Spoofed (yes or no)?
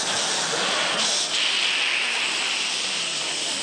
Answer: no